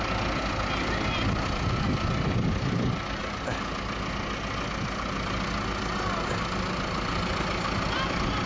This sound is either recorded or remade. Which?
recorded